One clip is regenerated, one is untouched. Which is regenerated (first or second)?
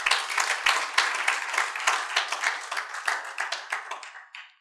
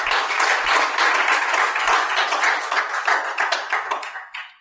second